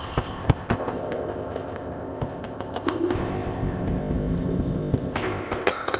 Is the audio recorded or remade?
remade